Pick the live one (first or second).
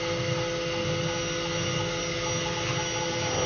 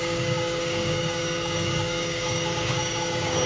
first